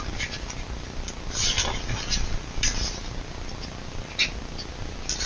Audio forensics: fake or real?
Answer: real